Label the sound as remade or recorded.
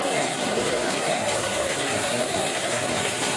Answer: remade